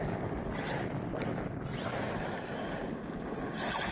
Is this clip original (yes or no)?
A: yes